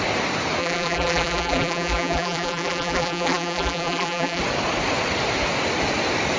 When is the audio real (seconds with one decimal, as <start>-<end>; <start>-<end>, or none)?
0.0-0.6; 4.4-6.4